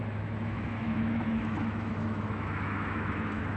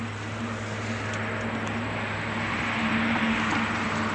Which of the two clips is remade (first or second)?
first